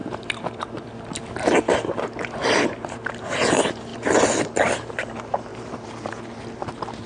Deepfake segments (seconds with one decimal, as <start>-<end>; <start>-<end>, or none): 0.0-0.8; 1.7-3.1; 3.9-4.4; 5.5-6.2